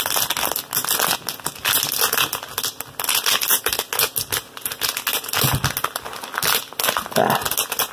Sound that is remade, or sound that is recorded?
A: recorded